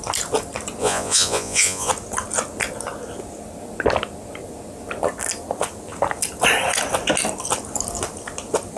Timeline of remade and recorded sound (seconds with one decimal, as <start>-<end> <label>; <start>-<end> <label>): 0.0-0.8 recorded; 0.8-1.9 remade; 1.9-8.8 recorded